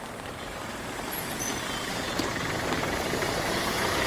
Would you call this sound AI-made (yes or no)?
yes